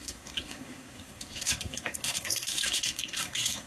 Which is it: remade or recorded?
remade